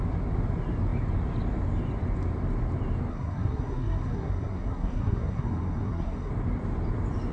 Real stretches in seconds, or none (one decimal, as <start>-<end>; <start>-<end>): 0.0-3.1; 6.3-7.3